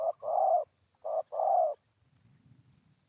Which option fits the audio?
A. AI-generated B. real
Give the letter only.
B